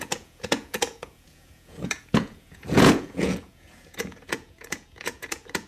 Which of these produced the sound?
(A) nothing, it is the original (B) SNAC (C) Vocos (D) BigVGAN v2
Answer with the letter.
C